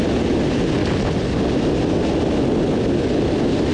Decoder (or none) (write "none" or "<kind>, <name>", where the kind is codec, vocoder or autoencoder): none